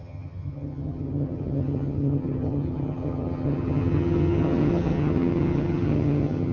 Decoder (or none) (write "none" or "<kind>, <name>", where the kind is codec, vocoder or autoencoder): vocoder, HiFi-GAN